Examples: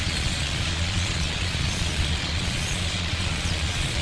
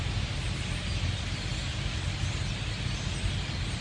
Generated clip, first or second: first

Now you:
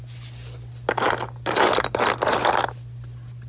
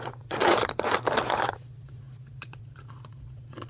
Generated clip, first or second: second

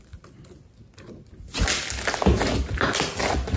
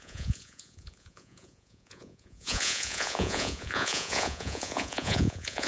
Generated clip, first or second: second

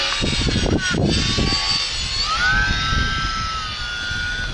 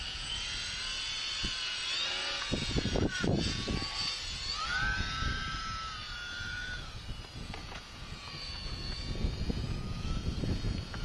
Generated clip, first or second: second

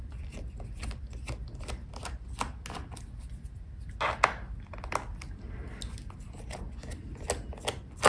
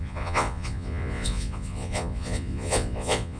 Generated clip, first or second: second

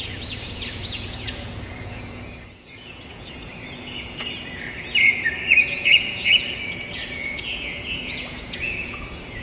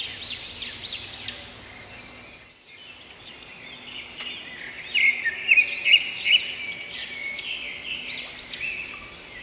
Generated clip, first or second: first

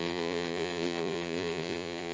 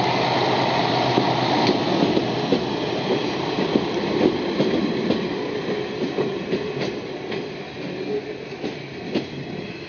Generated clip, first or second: first